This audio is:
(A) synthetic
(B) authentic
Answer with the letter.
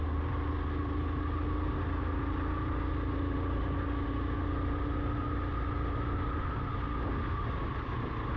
B